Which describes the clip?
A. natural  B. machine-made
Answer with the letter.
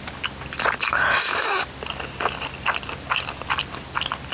A